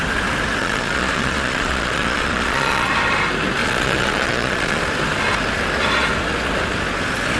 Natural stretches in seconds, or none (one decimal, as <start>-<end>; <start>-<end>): 0.0-0.6; 2.9-3.6; 4.8-7.4